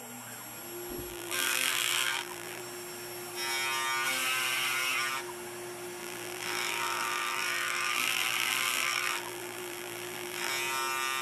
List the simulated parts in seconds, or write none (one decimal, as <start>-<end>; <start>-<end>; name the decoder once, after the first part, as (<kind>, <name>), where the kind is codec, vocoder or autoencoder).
1.1-2.6 (vocoder, BigVGAN v2); 6.0-10.5

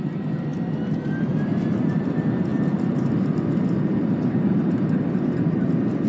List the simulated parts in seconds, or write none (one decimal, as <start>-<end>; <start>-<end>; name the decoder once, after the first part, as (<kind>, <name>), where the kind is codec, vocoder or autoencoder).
0.0-0.5 (vocoder, BigVGAN v2); 1.6-6.1